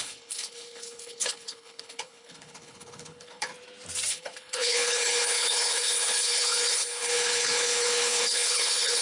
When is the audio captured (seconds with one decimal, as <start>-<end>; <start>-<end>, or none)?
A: 3.5-4.1